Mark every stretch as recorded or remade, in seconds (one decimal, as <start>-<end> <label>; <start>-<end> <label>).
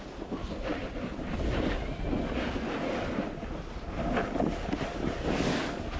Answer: 0.0-6.0 recorded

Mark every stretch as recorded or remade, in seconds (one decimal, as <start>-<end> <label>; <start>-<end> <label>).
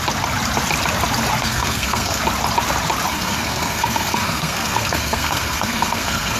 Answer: 0.0-1.4 recorded; 1.4-2.2 remade; 2.2-3.1 recorded; 3.1-6.4 remade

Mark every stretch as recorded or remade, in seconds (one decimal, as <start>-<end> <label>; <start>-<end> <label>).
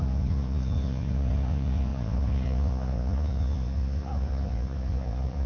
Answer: 0.0-5.5 remade